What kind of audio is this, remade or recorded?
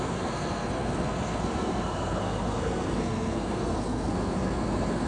remade